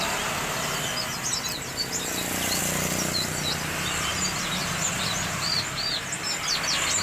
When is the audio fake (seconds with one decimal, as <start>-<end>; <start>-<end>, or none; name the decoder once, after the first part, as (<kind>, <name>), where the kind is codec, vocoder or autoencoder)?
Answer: 4.6-5.5 (vocoder, BigVGAN v2)